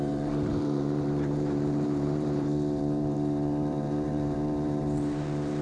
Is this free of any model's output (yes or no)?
no